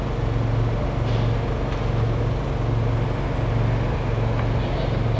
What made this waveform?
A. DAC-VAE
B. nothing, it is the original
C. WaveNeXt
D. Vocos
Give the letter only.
B